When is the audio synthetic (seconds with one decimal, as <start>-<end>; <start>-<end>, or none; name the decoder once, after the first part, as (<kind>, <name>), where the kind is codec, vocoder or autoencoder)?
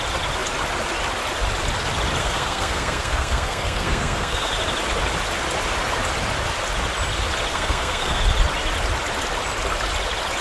2.2-4.5 (codec, SNAC); 7.5-8.2